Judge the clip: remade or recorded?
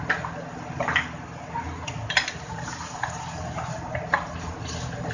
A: remade